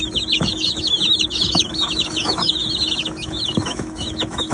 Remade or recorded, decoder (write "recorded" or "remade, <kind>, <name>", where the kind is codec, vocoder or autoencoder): remade, autoencoder, DAC-VAE